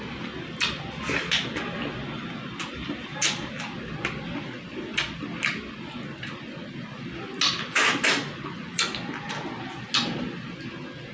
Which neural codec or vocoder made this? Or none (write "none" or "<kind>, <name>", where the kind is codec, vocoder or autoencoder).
none